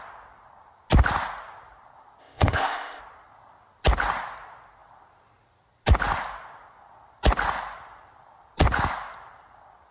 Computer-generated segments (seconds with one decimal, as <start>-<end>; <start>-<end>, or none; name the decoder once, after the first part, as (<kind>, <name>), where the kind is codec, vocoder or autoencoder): 2.2-3.0 (codec, ZipCodec)